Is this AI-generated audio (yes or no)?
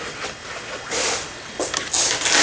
no